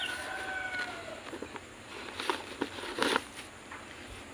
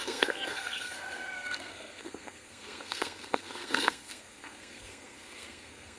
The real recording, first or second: first